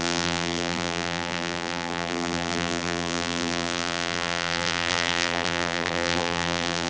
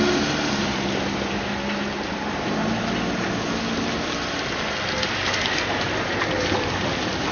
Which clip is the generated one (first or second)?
first